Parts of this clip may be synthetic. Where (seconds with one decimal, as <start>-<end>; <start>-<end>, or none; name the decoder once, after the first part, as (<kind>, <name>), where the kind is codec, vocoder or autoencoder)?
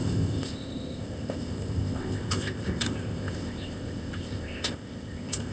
0.0-5.5 (codec, ZipCodec)